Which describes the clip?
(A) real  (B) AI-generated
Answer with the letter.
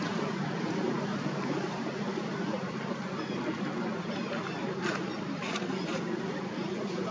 B